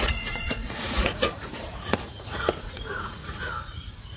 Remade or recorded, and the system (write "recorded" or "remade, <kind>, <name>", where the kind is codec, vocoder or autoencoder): remade, vocoder, Vocos